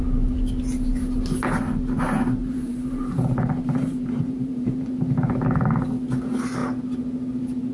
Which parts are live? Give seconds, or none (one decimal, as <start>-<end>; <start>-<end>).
0.0-2.4; 4.9-7.7